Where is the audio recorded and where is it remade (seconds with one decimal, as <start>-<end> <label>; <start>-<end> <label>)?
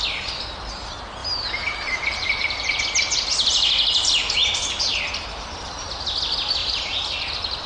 0.0-1.2 recorded; 1.2-2.8 remade; 2.8-4.4 recorded; 4.4-5.0 remade; 5.0-6.6 recorded; 6.6-7.3 remade; 7.3-7.7 recorded